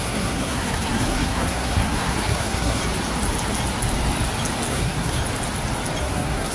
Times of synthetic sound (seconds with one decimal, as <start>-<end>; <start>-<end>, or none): 0.0-2.8; 4.7-5.2; 6.0-6.5